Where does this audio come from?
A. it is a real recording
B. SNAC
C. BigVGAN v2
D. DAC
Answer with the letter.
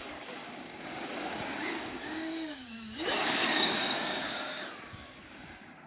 D